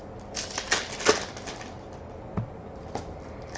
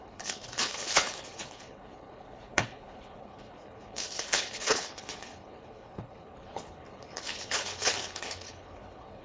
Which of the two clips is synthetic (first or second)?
second